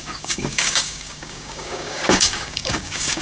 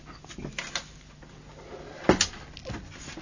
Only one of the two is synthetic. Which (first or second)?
first